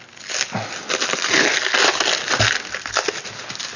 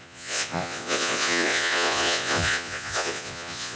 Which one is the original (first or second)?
first